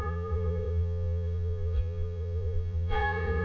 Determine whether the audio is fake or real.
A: fake